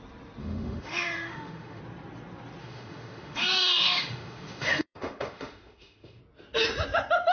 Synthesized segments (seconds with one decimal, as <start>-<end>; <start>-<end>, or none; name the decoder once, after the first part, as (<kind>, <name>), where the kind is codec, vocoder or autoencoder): 0.4-1.8 (autoencoder, DAC-VAE); 2.6-6.2